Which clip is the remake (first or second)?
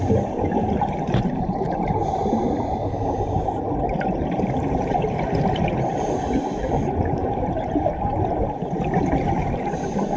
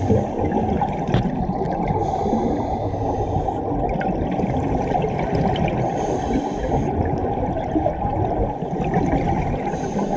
first